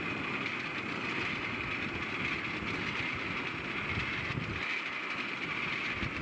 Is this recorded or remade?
recorded